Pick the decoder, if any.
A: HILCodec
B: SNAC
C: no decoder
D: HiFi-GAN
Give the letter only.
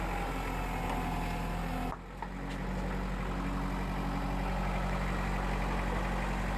C